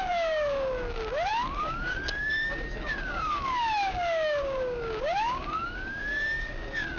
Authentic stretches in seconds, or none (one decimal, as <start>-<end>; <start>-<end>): none